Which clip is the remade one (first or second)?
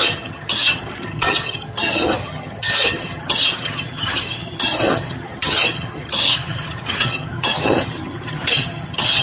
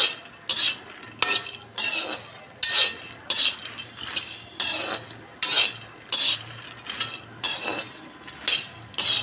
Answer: first